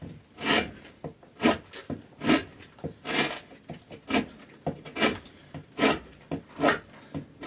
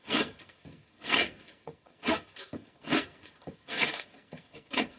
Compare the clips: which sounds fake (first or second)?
second